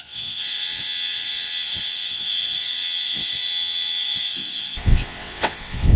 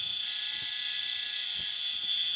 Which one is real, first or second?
second